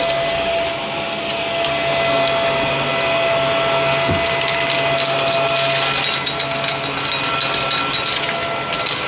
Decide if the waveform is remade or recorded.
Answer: recorded